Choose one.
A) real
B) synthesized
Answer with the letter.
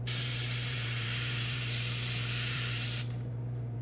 B